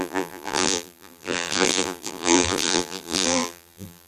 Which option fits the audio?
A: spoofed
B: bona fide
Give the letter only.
A